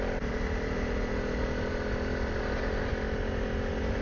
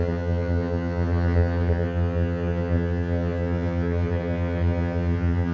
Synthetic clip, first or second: second